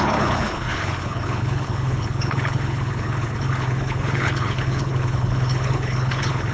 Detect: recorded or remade remade